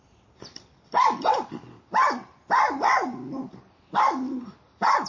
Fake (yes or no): no